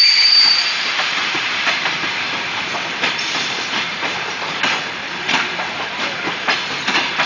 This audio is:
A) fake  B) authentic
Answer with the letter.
A